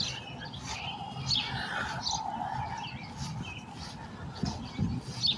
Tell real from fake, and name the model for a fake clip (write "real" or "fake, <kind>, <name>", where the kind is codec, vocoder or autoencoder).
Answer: real